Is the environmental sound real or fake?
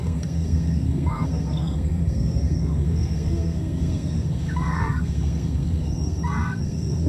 fake